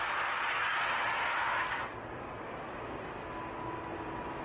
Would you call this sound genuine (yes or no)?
yes